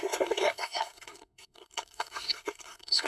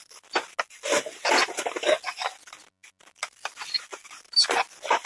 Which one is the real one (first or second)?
second